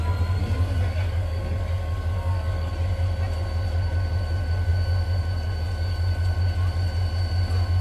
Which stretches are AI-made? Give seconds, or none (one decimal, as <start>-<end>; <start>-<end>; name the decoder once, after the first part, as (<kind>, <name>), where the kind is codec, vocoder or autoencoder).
0.4-2.7 (codec, DAC)